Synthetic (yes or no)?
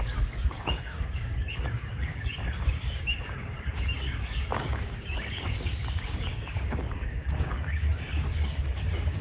yes